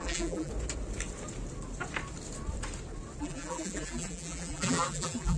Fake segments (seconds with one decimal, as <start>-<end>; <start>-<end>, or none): 0.0-0.5; 3.2-5.4